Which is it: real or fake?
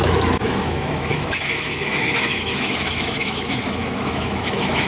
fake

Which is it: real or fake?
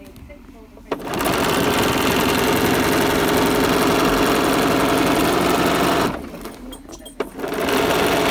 real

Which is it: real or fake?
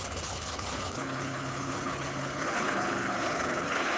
fake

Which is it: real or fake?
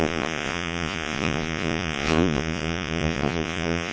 fake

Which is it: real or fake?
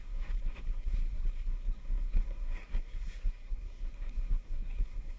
fake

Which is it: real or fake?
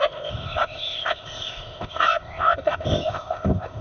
fake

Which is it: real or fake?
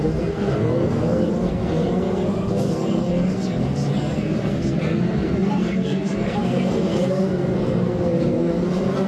fake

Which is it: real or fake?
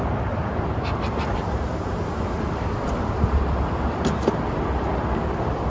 real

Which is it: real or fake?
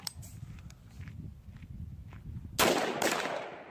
real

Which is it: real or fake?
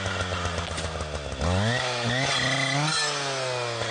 real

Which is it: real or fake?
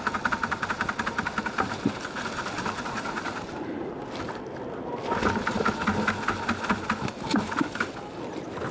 real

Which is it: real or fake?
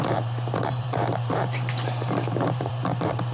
fake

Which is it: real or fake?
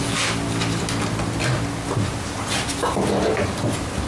real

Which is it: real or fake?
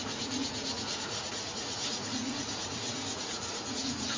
fake